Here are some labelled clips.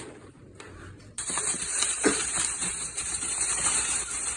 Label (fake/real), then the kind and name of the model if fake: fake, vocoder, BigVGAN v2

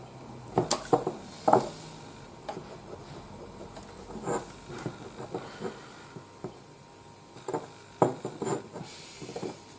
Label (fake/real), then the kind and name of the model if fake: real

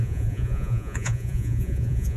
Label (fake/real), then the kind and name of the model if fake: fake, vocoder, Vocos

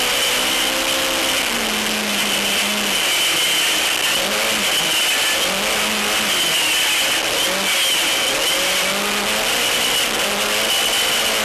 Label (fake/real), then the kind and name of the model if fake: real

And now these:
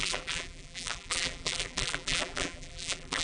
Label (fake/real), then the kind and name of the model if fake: fake, vocoder, BigVGAN v2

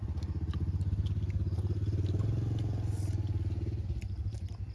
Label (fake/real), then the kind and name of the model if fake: real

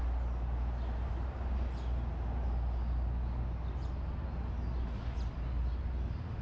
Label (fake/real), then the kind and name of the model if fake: real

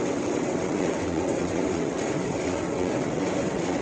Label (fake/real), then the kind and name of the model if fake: fake, vocoder, WaveNeXt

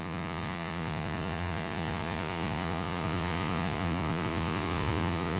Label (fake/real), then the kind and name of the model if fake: fake, vocoder, Vocos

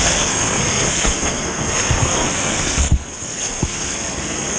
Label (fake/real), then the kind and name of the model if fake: fake, codec, SNAC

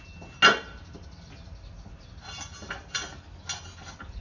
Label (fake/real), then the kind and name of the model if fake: real